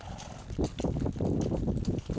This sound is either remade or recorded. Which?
recorded